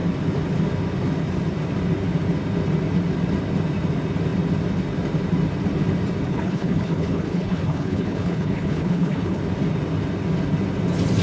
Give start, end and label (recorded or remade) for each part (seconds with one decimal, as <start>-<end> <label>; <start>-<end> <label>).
0.0-6.3 recorded; 6.3-9.4 remade; 9.4-11.2 recorded